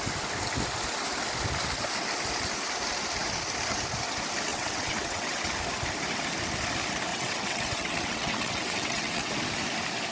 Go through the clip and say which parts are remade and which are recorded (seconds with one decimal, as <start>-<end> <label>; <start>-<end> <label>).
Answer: 0.0-4.5 recorded; 4.5-5.5 remade; 5.5-7.1 recorded; 7.1-9.3 remade; 9.3-10.1 recorded